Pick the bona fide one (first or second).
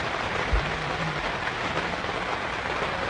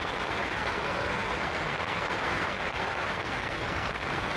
first